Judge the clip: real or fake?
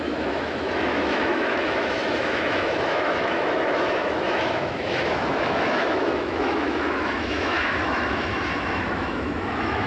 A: fake